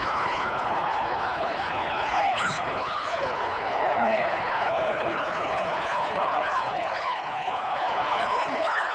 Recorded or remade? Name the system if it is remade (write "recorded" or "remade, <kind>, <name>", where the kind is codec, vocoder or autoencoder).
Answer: remade, codec, HILCodec